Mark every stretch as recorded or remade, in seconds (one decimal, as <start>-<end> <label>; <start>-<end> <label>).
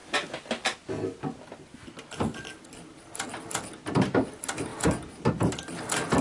0.0-6.2 recorded